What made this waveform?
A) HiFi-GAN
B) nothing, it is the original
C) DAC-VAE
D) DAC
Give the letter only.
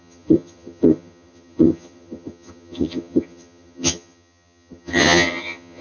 A